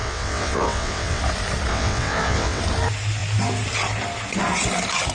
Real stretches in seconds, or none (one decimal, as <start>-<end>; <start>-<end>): 1.2-1.7; 2.6-5.1